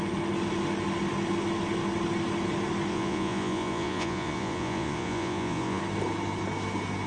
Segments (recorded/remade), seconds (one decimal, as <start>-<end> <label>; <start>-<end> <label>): 0.0-2.9 recorded; 2.9-5.8 remade; 5.8-7.1 recorded